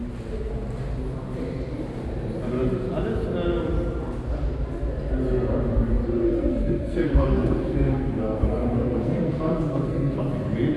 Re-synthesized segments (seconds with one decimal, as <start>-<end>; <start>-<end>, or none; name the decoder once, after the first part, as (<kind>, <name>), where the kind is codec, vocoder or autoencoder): 6.2-10.2 (codec, SNAC)